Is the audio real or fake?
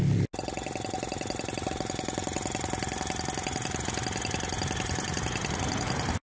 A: real